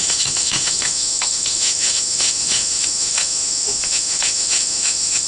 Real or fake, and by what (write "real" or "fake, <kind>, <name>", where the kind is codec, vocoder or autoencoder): fake, autoencoder, DAC-VAE